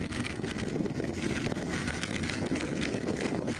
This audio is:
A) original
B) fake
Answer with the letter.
B